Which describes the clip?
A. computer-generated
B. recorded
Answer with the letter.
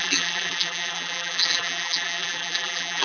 A